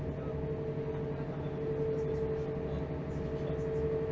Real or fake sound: real